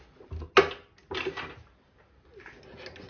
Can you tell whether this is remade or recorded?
recorded